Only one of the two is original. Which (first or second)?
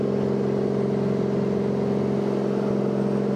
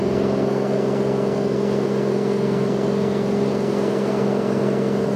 first